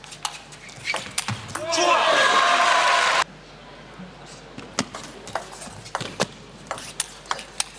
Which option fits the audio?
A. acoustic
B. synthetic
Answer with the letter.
A